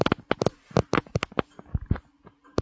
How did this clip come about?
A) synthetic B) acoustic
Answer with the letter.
B